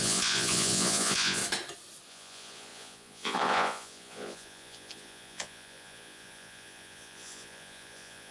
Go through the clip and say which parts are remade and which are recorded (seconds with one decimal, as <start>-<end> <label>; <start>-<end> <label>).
0.0-1.4 remade; 1.4-2.1 recorded; 2.1-8.3 remade